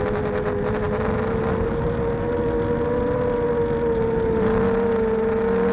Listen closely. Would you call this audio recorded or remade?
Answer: recorded